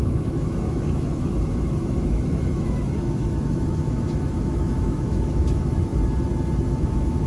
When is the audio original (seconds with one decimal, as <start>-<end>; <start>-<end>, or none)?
5.9-6.8

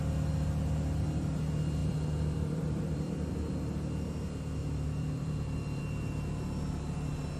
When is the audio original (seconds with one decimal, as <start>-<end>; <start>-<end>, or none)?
0.0-1.8; 3.1-4.6; 5.8-7.4

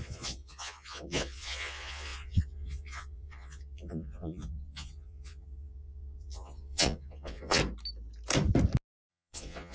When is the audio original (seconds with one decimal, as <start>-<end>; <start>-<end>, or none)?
7.6-9.1

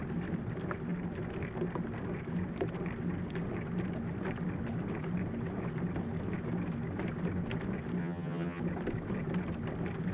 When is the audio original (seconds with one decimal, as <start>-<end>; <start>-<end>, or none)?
0.0-8.0; 8.6-10.1